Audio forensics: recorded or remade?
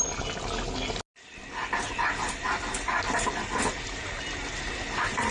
recorded